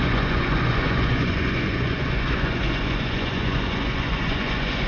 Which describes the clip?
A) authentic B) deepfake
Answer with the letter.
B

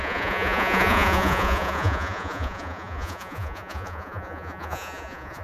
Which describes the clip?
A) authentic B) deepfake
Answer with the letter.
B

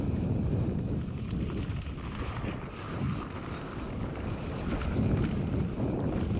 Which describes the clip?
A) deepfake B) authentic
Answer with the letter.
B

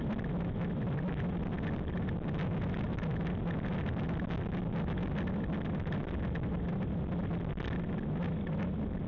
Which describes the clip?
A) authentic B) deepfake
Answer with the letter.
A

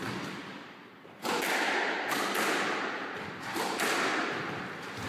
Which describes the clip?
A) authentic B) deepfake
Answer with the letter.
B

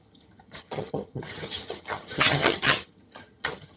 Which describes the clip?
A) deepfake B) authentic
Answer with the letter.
A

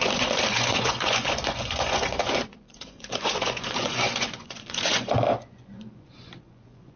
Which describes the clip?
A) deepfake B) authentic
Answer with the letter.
A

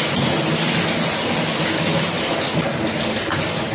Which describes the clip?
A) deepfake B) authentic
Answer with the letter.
B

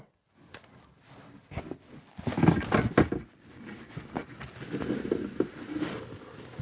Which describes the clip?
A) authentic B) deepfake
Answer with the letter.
A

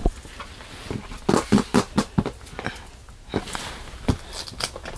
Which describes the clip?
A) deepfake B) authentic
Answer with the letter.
B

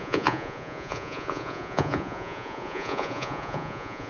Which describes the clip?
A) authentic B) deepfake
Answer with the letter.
B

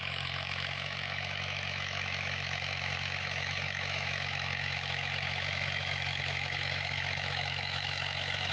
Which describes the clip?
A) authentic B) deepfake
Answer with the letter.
B